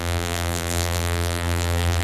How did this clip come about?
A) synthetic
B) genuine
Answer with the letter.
A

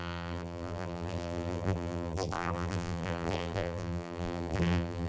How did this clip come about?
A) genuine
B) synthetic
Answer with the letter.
B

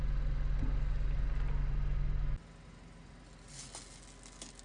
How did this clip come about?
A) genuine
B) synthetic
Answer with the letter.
A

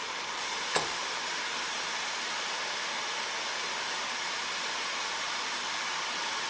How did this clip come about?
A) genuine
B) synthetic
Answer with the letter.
B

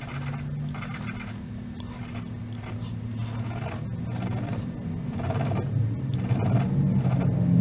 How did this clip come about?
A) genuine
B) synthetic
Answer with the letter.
A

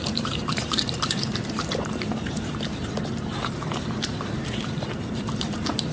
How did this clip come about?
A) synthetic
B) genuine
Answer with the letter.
A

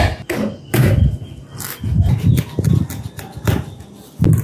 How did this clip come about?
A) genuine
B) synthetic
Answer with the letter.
A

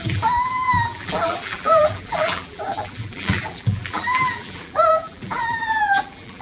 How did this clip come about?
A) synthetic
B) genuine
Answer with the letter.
A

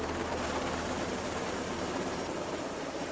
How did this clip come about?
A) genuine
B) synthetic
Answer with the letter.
B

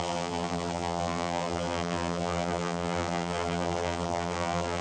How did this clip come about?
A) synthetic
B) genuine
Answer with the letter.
A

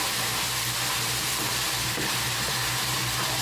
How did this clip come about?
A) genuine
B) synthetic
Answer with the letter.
A